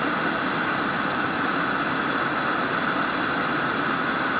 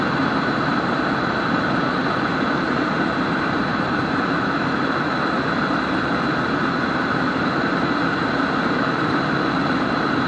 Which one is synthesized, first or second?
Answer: second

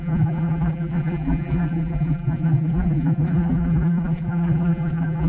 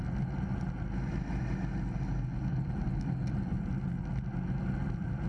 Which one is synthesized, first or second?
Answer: first